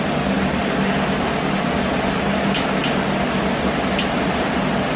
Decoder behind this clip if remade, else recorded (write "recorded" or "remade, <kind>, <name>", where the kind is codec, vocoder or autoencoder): recorded